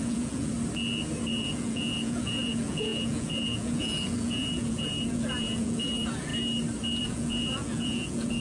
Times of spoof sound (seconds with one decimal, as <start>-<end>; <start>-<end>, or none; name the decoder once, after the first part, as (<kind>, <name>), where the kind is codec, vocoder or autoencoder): 0.0-0.5 (vocoder, Vocos); 1.3-6.3; 7.0-8.4